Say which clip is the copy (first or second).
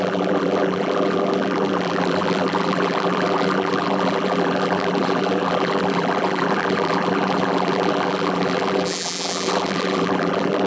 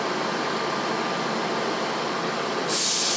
first